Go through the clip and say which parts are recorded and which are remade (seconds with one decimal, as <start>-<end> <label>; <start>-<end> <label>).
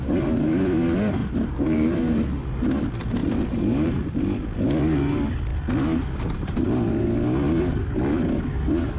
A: 0.0-1.2 recorded; 1.2-2.2 remade; 2.2-3.2 recorded; 3.2-4.2 remade; 4.2-9.0 recorded